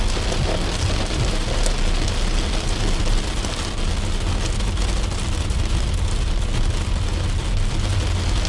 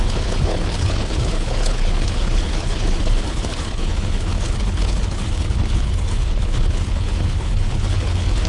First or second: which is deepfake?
second